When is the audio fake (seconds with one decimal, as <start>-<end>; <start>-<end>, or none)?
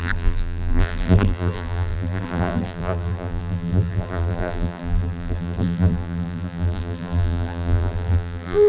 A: 0.0-8.7